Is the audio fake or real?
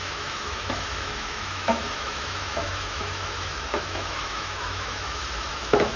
fake